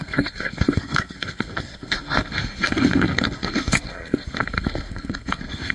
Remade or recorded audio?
remade